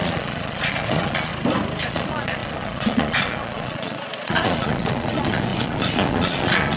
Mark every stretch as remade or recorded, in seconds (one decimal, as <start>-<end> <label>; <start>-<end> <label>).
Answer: 0.0-1.3 remade; 1.3-1.9 recorded; 1.9-6.8 remade